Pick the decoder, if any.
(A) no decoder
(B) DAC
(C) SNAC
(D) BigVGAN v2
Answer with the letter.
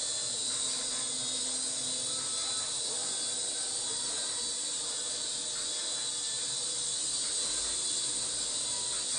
A